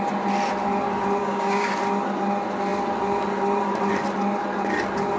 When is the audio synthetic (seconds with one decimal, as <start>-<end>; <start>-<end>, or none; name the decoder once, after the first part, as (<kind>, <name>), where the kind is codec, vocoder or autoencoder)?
1.2-1.7 (codec, DAC)